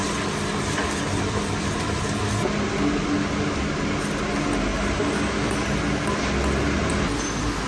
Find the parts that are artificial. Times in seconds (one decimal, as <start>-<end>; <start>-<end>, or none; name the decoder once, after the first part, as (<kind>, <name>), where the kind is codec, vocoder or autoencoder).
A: 0.0-2.2 (vocoder, BigVGAN v2)